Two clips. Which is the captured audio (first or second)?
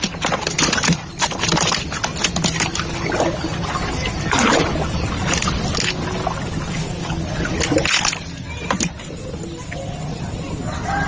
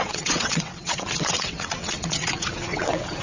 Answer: first